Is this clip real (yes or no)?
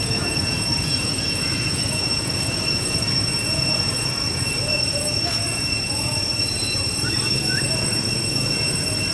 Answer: no